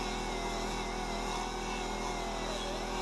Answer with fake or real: real